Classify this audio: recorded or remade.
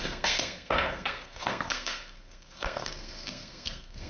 remade